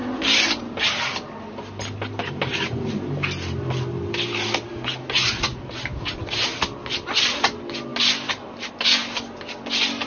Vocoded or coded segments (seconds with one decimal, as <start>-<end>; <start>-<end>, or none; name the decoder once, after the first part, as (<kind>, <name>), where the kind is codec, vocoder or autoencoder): none